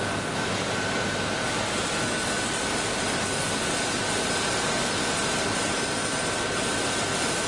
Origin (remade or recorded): recorded